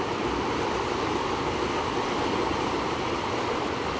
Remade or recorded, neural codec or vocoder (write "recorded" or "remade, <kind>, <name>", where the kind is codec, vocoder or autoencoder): recorded